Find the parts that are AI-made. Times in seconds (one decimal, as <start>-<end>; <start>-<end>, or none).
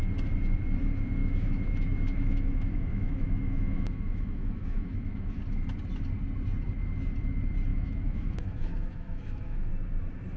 1.2-5.4; 7.7-9.7